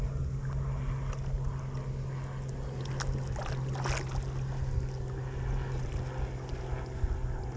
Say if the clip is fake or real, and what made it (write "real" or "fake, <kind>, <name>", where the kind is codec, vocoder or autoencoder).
real